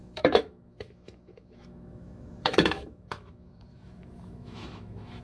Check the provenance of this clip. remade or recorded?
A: remade